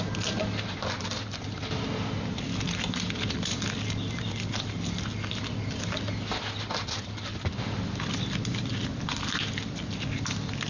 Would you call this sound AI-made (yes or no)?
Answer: no